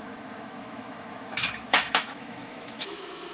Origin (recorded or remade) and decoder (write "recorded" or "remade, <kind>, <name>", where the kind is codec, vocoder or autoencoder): remade, autoencoder, DAC-VAE